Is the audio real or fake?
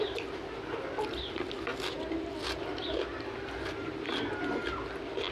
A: real